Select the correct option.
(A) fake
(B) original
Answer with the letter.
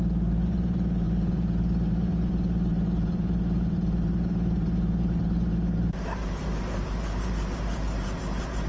A